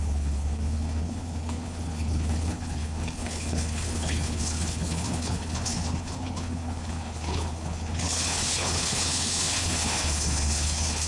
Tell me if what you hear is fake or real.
fake